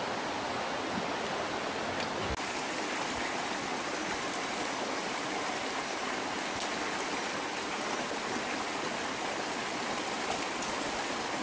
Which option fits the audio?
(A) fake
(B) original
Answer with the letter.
B